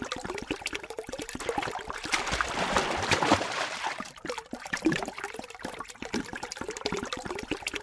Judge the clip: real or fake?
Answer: fake